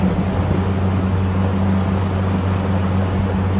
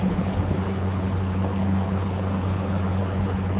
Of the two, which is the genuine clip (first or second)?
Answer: first